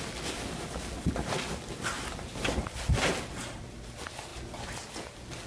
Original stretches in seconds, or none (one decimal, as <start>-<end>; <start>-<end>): 0.0-5.5